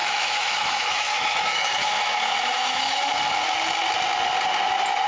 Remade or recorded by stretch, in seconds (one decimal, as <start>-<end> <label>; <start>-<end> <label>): 0.0-3.1 remade; 3.1-5.1 recorded